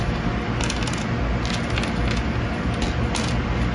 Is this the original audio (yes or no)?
yes